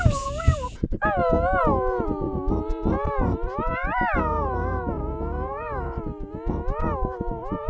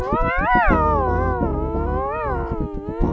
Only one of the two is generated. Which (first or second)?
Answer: first